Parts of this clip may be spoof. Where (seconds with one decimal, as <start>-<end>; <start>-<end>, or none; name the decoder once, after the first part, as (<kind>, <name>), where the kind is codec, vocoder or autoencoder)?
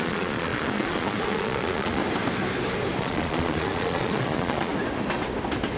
0.0-2.0 (vocoder, Vocos); 3.0-4.7